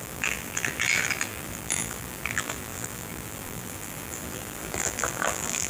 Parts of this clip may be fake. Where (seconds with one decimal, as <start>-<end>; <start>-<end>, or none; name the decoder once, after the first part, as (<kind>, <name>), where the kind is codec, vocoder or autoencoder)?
0.0-5.7 (vocoder, BigVGAN v2)